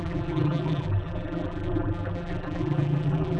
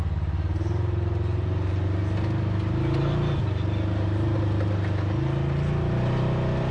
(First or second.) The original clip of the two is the second